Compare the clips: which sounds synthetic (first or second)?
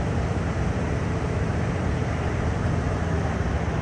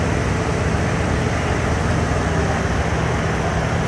first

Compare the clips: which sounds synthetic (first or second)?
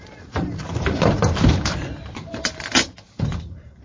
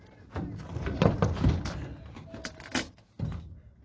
first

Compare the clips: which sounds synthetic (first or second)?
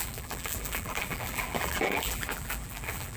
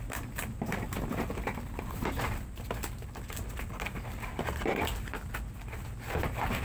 first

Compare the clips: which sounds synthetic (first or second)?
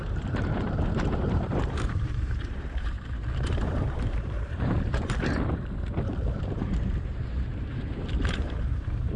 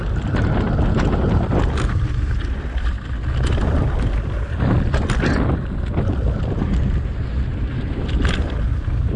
first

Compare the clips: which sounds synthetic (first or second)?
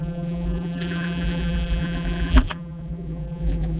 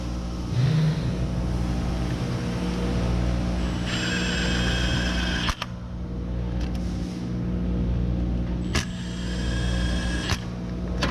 first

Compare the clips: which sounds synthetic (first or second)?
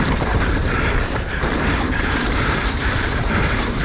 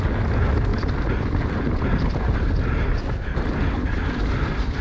first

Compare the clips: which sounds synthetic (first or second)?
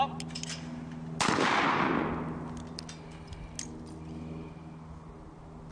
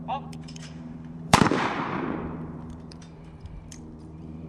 second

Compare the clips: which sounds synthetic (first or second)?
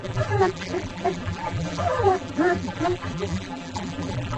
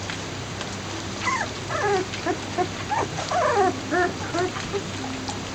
first